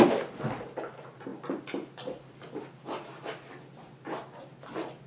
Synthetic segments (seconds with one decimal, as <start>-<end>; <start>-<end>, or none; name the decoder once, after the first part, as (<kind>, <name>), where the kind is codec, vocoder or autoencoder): none